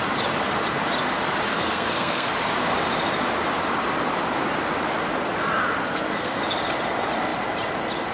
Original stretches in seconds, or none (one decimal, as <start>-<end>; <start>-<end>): 0.0-1.5; 2.3-5.8; 6.4-8.1